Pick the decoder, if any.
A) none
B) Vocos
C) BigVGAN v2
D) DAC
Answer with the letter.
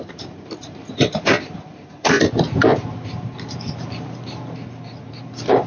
C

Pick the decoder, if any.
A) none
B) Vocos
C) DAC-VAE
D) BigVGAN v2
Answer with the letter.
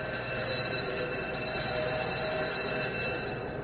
D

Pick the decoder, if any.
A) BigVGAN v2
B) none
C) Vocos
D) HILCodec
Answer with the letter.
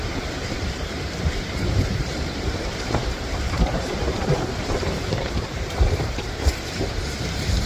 A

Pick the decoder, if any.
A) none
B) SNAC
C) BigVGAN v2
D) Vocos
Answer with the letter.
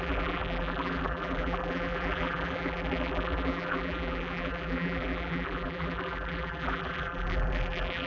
C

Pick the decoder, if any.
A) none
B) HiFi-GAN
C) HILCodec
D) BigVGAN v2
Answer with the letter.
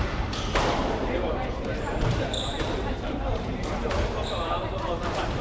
D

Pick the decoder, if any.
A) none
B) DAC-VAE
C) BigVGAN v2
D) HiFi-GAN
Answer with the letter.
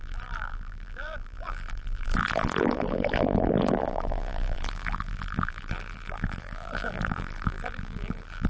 C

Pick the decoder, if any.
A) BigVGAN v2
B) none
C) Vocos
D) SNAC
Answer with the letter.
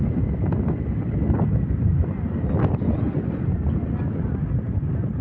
B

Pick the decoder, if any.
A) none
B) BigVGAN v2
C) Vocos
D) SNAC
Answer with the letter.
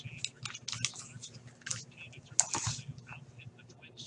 A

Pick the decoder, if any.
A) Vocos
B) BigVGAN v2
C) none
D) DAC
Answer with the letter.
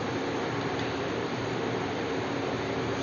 B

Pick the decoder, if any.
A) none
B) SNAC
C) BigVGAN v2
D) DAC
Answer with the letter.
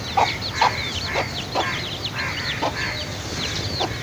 C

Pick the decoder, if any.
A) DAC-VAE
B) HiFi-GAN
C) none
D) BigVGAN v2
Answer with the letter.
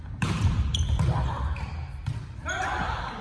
C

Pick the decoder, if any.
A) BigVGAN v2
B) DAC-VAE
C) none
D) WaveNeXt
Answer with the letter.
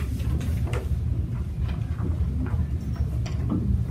C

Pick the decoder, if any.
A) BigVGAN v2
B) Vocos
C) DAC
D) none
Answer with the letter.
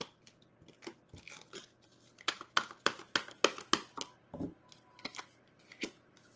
D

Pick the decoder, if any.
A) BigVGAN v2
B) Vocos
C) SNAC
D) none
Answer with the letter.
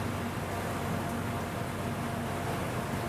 D